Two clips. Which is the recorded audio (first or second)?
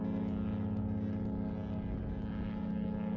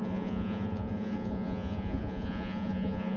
first